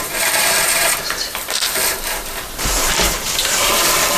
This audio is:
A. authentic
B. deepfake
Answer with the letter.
B